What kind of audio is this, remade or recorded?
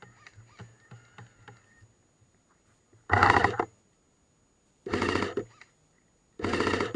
recorded